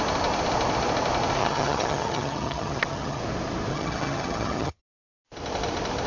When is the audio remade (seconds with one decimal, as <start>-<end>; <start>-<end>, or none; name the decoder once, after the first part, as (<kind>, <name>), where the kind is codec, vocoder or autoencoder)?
1.4-3.2 (vocoder, HiFi-GAN); 3.7-4.8